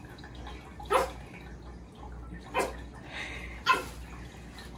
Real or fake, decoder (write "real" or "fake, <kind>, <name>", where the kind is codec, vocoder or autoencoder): real